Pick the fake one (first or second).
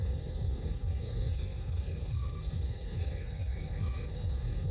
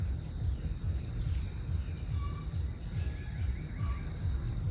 first